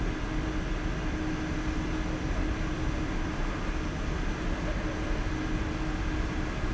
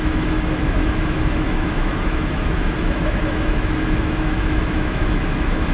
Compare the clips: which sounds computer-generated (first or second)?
second